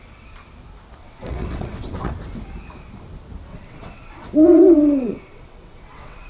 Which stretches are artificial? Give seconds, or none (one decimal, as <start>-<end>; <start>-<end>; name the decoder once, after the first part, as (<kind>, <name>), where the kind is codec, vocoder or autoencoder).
1.0-2.1 (vocoder, WaveNeXt); 3.5-6.3